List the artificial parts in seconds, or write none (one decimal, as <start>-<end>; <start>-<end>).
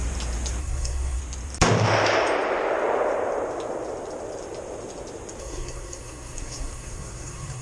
0.6-1.2; 5.4-7.6